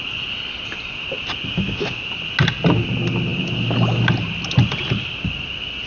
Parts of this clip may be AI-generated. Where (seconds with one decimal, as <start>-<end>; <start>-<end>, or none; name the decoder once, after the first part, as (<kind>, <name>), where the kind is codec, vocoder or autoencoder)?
none